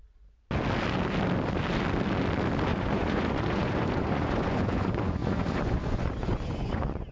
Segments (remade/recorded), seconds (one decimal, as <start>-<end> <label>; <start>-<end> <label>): 0.0-2.7 recorded; 2.7-7.1 remade